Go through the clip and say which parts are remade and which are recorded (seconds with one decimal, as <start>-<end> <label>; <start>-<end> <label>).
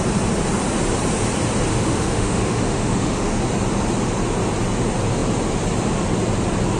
0.0-1.7 recorded; 1.7-3.4 remade; 3.4-6.8 recorded